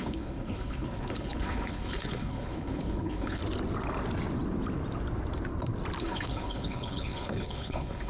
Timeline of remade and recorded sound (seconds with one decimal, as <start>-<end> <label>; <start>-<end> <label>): 0.0-3.4 remade; 3.4-6.0 recorded; 6.0-8.1 remade